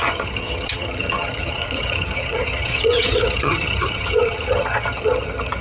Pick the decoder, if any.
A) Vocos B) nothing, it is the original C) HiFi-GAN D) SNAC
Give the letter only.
C